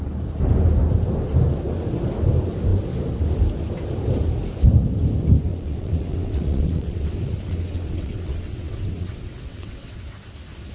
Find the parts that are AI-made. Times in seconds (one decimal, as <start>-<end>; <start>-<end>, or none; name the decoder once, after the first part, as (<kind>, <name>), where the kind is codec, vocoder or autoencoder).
5.5-10.0 (vocoder, WaveNeXt)

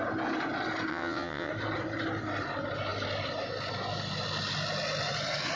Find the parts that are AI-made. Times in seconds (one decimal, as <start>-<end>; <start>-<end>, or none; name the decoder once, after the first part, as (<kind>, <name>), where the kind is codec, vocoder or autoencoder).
0.9-1.5 (vocoder, WaveNeXt)

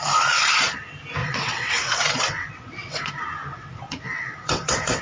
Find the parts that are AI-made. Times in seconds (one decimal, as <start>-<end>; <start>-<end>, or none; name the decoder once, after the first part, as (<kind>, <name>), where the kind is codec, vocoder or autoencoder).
1.2-3.1 (vocoder, WaveNeXt); 3.5-5.0

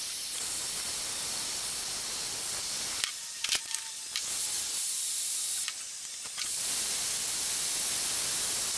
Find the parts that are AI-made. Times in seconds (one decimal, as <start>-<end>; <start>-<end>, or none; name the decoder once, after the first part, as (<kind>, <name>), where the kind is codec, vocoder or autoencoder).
none

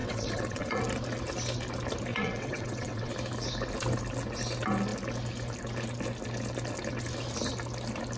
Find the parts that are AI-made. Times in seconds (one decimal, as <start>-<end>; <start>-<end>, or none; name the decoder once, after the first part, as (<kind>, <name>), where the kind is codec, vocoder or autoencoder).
0.0-0.8 (vocoder, WaveNeXt); 2.1-3.1

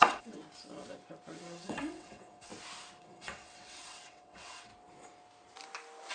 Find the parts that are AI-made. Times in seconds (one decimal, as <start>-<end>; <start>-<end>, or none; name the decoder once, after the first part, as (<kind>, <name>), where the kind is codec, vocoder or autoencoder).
0.0-0.4 (vocoder, WaveNeXt); 1.4-2.5; 3.0-4.7

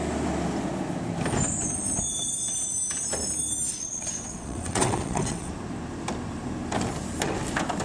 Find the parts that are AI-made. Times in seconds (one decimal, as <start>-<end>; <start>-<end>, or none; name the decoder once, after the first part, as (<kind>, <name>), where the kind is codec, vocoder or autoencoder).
3.7-5.5 (vocoder, WaveNeXt)

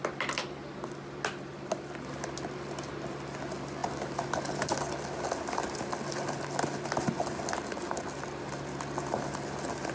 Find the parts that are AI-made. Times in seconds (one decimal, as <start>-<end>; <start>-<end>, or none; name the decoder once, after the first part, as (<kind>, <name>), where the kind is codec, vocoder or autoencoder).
none